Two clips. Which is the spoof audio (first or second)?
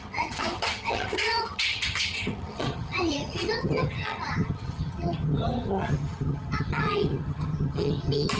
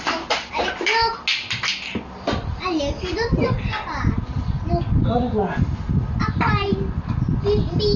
first